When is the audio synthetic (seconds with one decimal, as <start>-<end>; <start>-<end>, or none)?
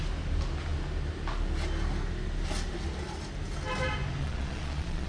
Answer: 4.2-5.1